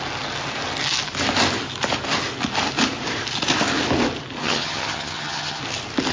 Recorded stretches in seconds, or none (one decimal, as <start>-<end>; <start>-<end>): 0.0-4.4; 5.6-6.1